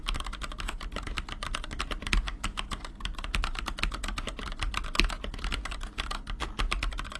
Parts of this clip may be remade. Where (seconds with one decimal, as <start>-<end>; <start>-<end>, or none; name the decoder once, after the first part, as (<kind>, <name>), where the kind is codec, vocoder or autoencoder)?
none